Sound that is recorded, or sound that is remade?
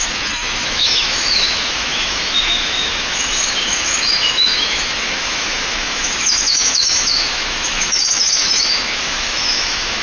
remade